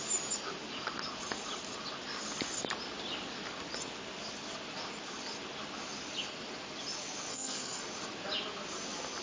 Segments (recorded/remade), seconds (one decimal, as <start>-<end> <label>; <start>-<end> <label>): 0.0-7.3 recorded; 7.3-7.8 remade; 7.8-9.2 recorded